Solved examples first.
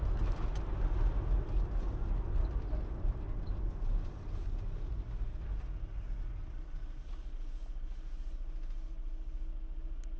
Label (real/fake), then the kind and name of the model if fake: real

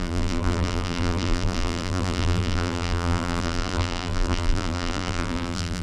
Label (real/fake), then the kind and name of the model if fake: fake, vocoder, BigVGAN v2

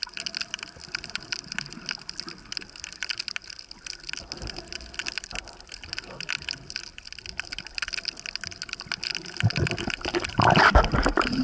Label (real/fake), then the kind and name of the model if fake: real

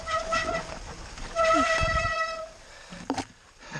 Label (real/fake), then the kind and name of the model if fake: fake, vocoder, BigVGAN v2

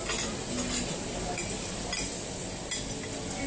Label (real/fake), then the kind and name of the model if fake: real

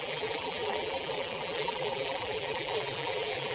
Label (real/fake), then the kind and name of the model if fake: fake, vocoder, BigVGAN v2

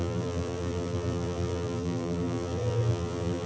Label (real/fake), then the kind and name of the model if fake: fake, vocoder, BigVGAN v2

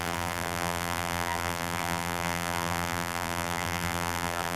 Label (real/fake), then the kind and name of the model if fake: fake, vocoder, BigVGAN v2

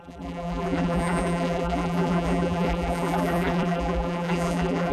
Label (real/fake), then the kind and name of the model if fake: fake, vocoder, BigVGAN v2